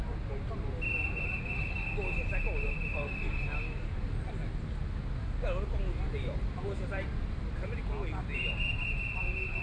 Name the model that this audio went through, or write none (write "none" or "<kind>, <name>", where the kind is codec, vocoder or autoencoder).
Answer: none